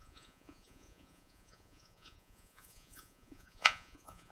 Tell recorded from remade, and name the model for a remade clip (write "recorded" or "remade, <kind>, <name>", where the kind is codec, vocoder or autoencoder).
remade, vocoder, Vocos